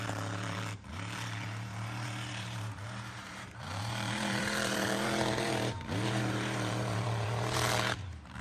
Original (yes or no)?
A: no